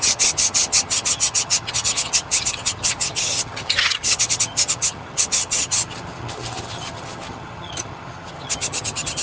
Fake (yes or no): yes